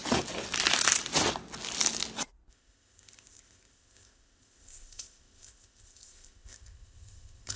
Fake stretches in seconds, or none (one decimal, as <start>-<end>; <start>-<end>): 2.5-7.6